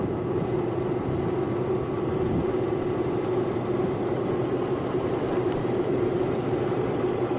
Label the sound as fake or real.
fake